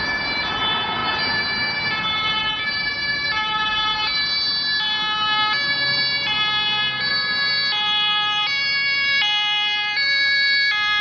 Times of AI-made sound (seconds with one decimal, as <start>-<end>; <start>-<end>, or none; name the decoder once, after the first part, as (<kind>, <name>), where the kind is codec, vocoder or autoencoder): none